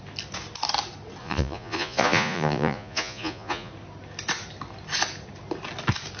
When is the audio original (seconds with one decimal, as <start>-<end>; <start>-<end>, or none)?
0.0-1.2; 3.7-6.2